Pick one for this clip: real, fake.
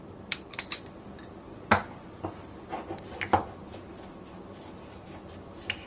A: real